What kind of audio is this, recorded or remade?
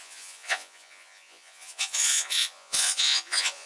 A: remade